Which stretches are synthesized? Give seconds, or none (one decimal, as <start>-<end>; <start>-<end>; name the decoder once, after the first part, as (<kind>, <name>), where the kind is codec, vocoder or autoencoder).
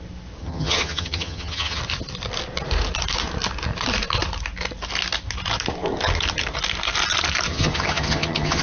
0.4-1.8 (vocoder, HiFi-GAN); 7.5-8.6